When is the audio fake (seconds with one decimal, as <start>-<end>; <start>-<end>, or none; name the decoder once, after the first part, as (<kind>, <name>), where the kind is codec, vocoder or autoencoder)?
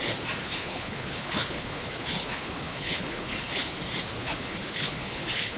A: 0.4-3.8 (codec, HILCodec); 4.2-5.6